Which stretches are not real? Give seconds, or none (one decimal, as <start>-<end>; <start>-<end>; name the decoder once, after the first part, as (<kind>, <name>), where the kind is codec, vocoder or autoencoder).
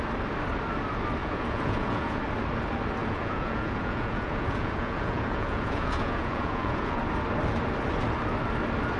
1.2-2.2 (vocoder, Vocos); 3.0-7.0